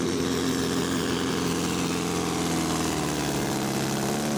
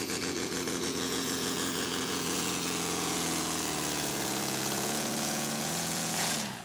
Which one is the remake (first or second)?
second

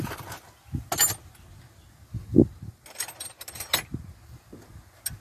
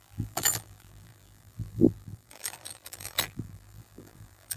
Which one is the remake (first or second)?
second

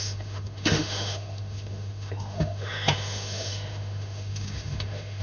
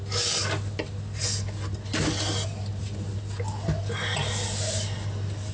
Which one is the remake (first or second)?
first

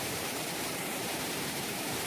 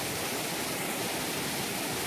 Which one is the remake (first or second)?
first